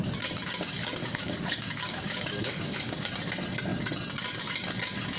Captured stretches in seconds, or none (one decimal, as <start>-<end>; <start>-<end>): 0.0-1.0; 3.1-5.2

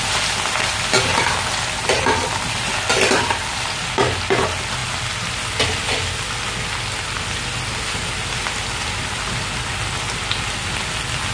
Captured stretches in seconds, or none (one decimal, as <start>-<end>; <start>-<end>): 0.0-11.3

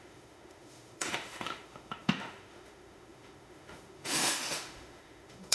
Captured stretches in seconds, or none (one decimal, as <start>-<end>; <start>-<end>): none

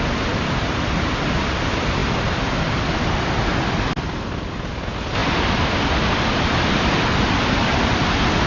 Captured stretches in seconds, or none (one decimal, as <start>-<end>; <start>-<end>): 0.0-8.5